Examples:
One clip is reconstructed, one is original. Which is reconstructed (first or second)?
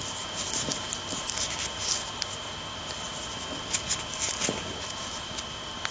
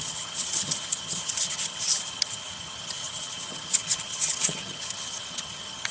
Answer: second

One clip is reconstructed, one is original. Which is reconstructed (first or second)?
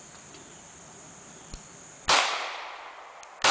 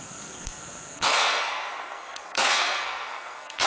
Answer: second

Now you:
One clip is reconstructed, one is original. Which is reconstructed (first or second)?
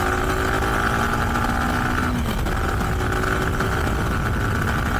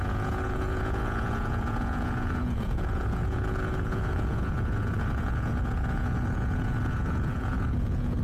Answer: second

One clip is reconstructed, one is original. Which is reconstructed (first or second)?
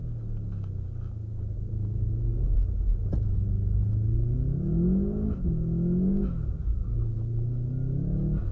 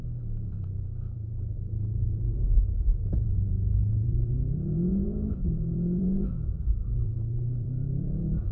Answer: second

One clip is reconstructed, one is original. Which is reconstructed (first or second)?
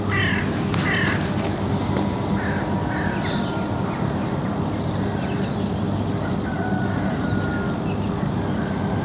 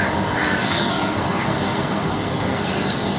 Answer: second